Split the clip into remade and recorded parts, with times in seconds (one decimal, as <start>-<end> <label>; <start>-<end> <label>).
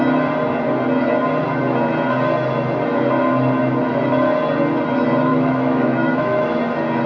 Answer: 0.0-5.3 recorded; 5.3-6.6 remade; 6.6-7.1 recorded